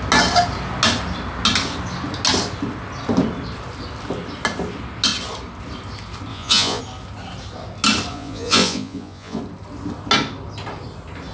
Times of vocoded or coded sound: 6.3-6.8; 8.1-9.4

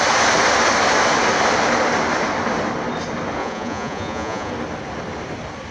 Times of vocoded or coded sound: 3.4-4.5